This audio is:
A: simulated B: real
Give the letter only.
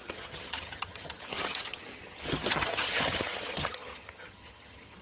A